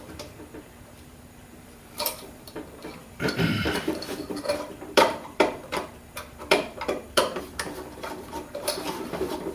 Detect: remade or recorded remade